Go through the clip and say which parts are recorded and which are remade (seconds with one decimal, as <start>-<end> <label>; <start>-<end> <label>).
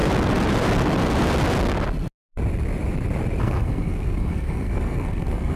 0.0-3.4 recorded; 3.4-5.6 remade